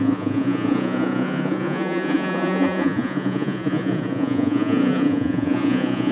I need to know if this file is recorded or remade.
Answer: remade